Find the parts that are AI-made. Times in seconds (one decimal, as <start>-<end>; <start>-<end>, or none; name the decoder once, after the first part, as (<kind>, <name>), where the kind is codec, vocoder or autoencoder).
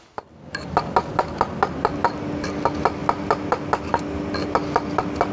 none